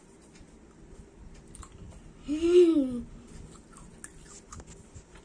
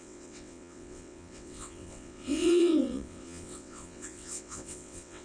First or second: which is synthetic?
second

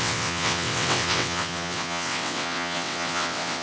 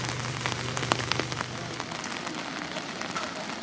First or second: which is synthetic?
first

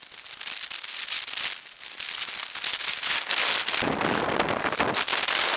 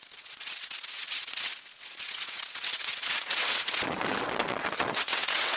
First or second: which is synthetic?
second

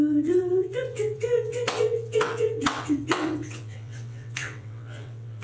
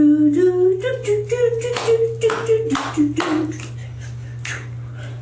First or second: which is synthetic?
first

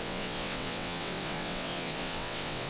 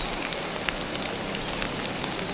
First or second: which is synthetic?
first